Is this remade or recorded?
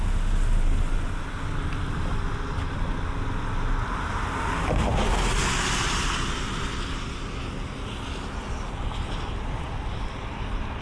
recorded